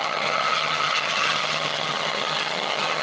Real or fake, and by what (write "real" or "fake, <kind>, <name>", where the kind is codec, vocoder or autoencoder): fake, vocoder, HiFi-GAN